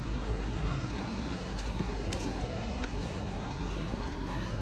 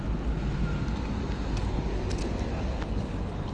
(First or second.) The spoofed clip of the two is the first